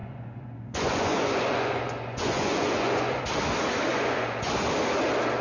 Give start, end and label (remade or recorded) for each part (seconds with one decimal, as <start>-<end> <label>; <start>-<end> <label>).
0.0-3.2 remade; 3.2-3.9 recorded; 3.9-4.5 remade; 4.5-5.4 recorded